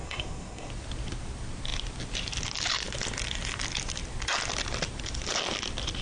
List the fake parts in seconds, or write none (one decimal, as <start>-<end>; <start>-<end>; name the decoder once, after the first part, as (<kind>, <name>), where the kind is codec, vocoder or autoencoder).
0.0-0.7 (codec, SNAC)